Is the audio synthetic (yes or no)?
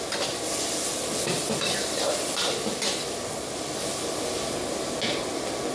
no